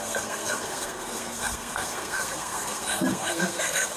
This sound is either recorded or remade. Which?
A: remade